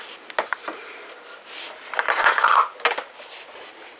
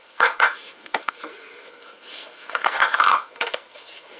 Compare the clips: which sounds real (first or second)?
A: first